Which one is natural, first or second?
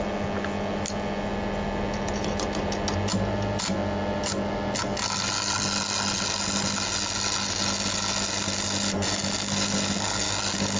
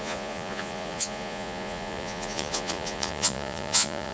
first